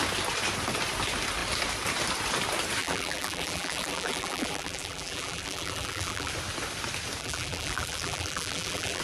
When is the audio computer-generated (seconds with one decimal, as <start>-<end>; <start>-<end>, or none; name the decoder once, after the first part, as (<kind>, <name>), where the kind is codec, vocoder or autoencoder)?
2.8-6.3 (vocoder, BigVGAN v2); 7.2-9.0